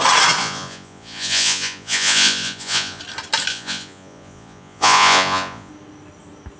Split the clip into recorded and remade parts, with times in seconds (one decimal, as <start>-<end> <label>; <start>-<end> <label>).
0.0-0.4 recorded; 0.4-3.0 remade; 3.0-3.5 recorded; 3.5-5.7 remade; 5.7-6.6 recorded